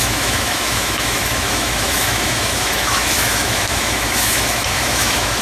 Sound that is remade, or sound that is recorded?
remade